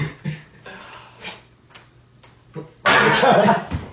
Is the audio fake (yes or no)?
no